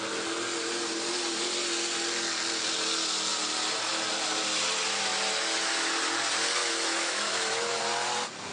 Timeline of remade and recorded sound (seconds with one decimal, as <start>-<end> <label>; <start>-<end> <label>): 0.0-6.6 recorded; 6.6-7.8 remade; 7.8-8.5 recorded